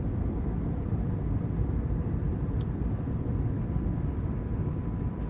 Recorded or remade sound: remade